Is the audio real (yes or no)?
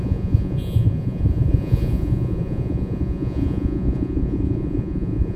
no